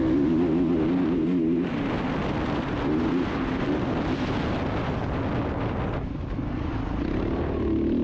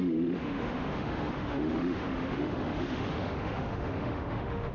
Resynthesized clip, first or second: second